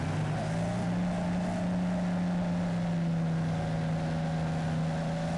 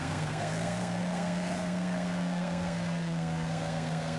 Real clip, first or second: first